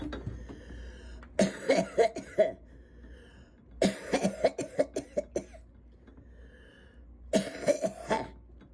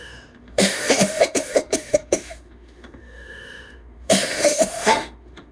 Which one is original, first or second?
first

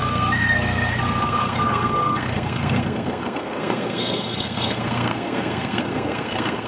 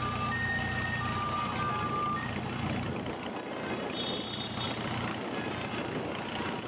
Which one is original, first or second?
second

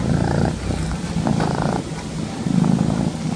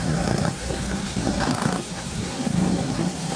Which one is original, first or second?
first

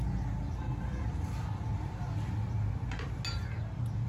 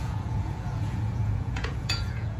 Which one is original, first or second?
first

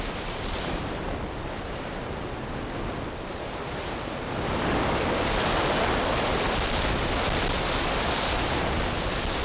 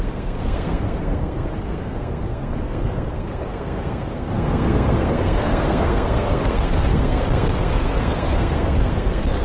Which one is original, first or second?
first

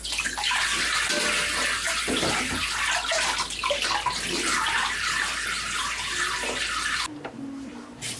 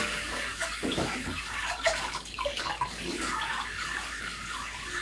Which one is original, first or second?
first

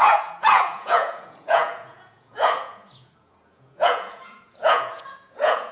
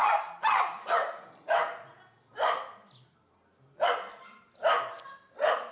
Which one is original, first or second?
second